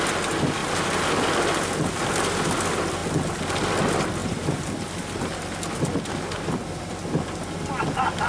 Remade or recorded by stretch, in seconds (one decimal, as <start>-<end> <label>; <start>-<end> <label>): 0.0-4.2 recorded; 4.2-6.1 remade; 6.1-8.3 recorded

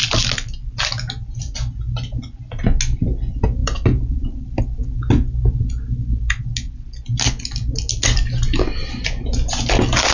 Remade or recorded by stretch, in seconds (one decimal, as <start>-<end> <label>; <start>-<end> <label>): 0.0-3.6 recorded; 3.6-4.6 remade; 4.6-10.1 recorded